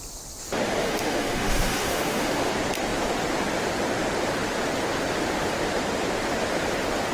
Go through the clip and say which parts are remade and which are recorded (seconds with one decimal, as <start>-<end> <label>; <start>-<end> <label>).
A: 0.0-0.8 recorded; 0.8-2.5 remade; 2.5-7.1 recorded